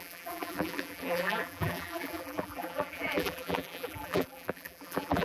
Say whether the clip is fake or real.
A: fake